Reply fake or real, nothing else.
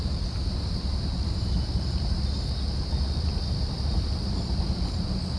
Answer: real